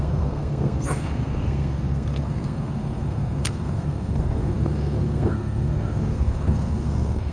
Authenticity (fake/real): fake